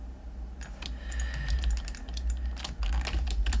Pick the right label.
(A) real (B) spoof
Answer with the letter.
A